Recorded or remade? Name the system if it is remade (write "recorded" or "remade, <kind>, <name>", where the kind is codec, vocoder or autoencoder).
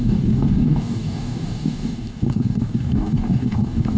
remade, codec, DAC